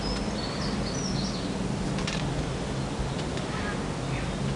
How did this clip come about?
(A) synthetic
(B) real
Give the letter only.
B